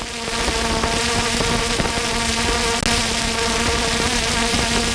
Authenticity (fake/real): real